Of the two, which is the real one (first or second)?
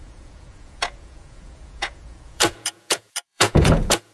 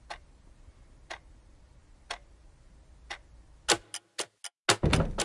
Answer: second